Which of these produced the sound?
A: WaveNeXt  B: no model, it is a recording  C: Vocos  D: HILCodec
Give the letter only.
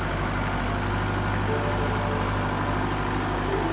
B